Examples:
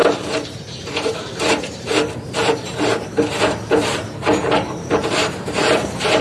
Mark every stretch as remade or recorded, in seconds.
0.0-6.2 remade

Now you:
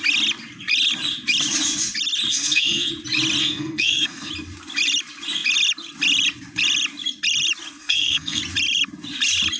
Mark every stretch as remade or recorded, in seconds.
0.0-2.3 recorded; 2.3-2.9 remade; 2.9-3.4 recorded; 3.4-4.3 remade; 4.3-7.8 recorded; 7.8-8.4 remade; 8.4-9.6 recorded

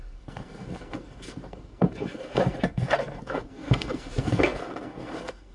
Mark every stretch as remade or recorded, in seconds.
0.0-5.5 remade

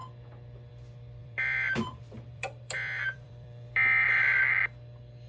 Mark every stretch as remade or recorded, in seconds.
0.0-1.2 recorded; 1.2-4.4 remade; 4.4-5.3 recorded